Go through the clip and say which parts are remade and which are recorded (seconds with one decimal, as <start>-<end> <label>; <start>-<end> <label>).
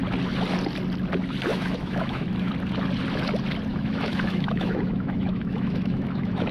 0.0-1.5 recorded; 1.5-2.5 remade; 2.5-3.7 recorded; 3.7-6.5 remade